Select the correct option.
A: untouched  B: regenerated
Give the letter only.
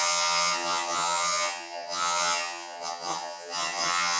B